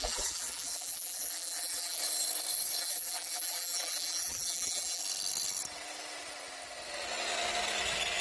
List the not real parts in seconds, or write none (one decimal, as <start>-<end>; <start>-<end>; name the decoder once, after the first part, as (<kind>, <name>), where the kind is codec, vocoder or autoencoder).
0.0-2.0 (vocoder, BigVGAN v2); 2.8-5.0